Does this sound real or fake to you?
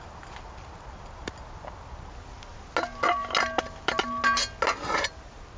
real